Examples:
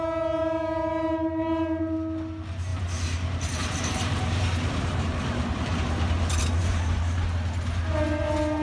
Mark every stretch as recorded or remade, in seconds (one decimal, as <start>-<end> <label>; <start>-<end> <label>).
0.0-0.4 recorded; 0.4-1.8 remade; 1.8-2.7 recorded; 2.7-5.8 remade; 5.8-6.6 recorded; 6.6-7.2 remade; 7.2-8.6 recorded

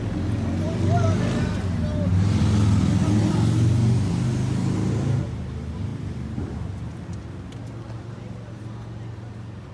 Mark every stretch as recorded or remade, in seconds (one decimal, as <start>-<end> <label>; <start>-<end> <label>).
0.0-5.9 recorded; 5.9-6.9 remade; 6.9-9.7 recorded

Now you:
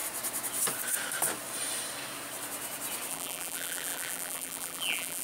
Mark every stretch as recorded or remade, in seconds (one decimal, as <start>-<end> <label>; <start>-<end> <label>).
0.0-3.1 recorded; 3.1-5.2 remade

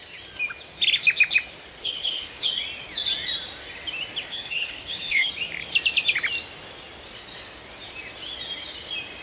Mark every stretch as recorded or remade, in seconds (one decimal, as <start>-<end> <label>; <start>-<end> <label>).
0.0-1.8 recorded; 1.8-2.5 remade; 2.5-4.3 recorded; 4.3-5.3 remade; 5.3-9.2 recorded